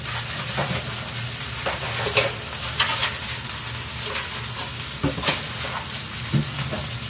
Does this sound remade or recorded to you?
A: recorded